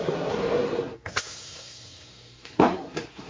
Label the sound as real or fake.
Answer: fake